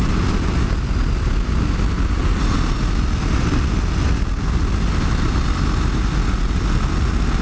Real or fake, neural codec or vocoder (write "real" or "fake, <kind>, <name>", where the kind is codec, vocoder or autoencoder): real